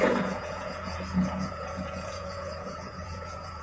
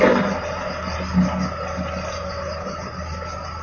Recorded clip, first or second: second